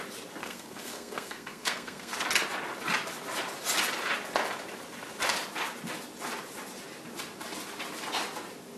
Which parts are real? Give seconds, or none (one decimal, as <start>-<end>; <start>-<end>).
0.0-0.4; 2.1-8.8